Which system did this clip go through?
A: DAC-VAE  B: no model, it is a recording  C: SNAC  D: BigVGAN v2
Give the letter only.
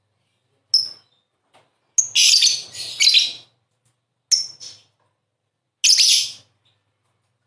B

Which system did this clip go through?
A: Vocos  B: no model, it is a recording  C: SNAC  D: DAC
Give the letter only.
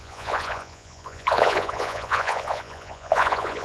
A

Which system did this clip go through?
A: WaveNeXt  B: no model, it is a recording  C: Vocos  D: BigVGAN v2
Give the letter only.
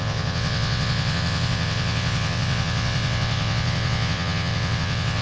A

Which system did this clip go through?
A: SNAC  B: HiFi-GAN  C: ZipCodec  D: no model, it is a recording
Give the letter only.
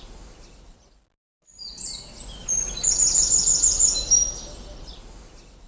D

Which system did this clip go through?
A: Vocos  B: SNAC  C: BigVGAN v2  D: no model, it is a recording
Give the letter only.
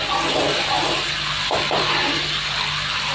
D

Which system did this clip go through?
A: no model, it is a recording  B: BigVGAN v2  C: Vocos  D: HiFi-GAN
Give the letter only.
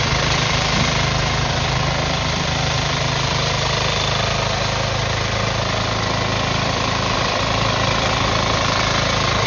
B